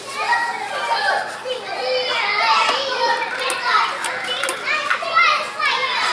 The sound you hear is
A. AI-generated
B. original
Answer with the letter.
B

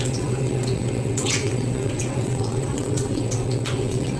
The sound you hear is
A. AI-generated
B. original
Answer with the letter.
A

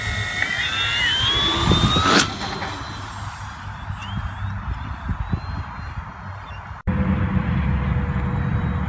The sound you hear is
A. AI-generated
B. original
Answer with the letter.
B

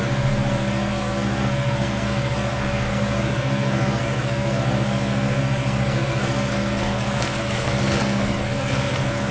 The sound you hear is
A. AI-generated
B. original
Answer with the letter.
A